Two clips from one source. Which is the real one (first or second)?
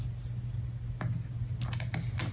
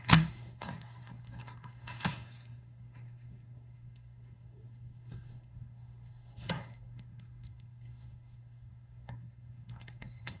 first